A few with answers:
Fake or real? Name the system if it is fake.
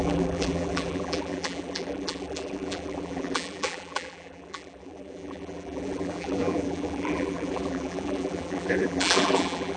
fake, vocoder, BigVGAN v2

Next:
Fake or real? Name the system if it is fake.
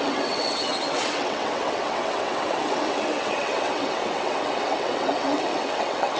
fake, vocoder, WaveNeXt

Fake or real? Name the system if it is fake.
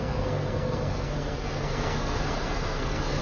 fake, codec, SNAC